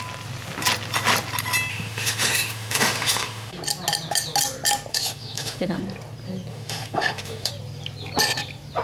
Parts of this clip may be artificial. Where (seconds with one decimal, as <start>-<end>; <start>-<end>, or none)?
1.7-3.6; 4.9-5.8; 6.5-7.5